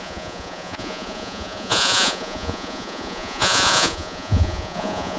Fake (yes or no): yes